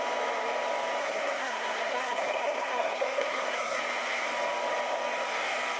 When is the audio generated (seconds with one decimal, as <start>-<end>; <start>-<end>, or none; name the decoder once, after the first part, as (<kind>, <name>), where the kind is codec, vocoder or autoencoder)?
1.0-3.8 (codec, SNAC)